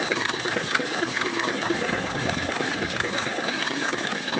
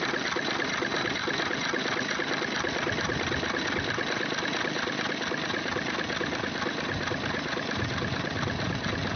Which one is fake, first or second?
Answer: first